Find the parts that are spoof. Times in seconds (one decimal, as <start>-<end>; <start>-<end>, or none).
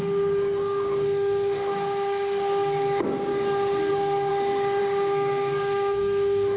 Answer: 0.0-3.3; 3.9-4.3; 4.8-6.6